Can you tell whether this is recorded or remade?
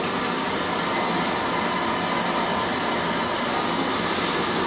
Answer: recorded